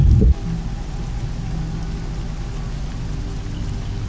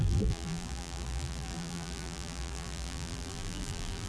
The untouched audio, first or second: first